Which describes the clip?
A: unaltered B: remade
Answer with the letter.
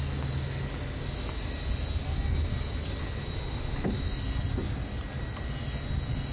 A